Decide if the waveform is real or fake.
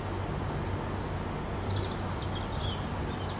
real